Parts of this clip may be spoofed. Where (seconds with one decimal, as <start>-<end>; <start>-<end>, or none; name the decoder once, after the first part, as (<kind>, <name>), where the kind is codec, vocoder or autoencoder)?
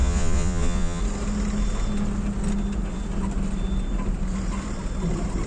0.0-1.0 (vocoder, Vocos)